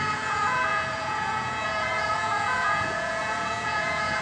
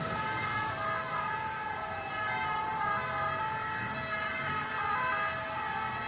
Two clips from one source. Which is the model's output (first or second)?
first